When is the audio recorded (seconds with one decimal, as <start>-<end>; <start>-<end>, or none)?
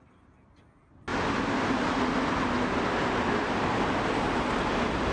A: 0.0-5.1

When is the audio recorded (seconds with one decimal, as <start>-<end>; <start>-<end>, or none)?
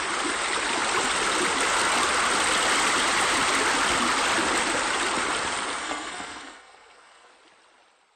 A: 0.0-5.8; 7.3-8.2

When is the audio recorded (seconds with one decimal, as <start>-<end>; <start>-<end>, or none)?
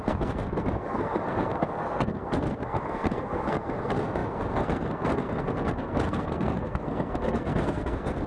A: none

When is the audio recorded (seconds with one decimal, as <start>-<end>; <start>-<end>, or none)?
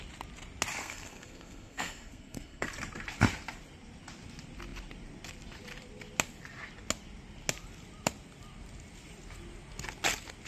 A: 0.0-0.8; 2.7-10.5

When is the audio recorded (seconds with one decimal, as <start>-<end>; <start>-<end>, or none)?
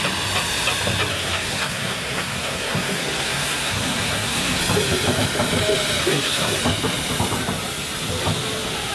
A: 0.0-1.1; 4.6-6.0; 6.6-8.9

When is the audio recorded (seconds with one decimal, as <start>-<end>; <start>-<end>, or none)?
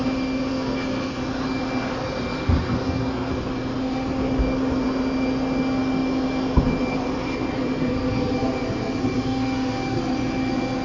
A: 0.0-0.5; 1.2-2.6; 3.3-10.8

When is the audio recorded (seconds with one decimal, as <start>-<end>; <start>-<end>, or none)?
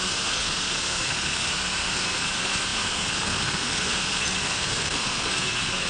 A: none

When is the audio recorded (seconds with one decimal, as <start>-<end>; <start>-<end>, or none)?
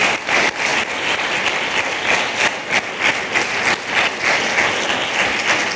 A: 0.0-5.8